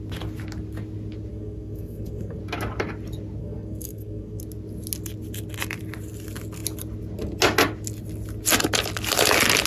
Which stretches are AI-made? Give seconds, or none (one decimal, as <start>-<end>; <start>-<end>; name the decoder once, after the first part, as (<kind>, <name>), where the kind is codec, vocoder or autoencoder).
1.3-2.4 (codec, SNAC); 3.4-4.4